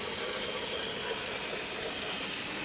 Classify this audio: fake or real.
real